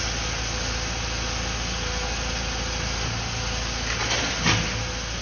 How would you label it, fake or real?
real